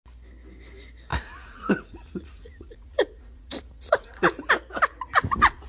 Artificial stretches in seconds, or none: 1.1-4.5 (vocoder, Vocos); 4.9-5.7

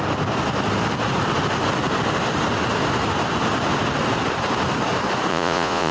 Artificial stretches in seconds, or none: 5.3-5.9 (vocoder, Vocos)

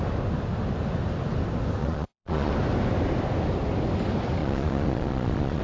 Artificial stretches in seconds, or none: 1.8-2.5 (vocoder, Vocos); 4.4-5.6

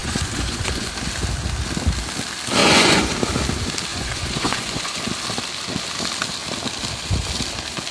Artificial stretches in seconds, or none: 0.0-0.9 (vocoder, Vocos); 2.6-3.1; 3.9-5.0

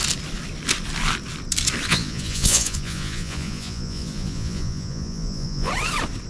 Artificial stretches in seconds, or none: 1.9-5.7 (vocoder, Vocos)